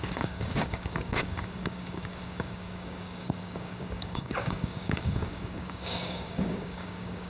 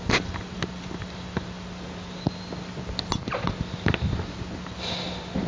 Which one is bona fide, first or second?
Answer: second